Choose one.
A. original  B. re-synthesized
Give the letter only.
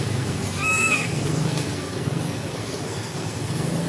B